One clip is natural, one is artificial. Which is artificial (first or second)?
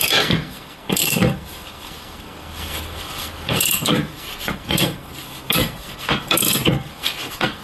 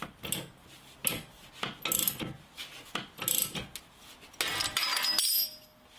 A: first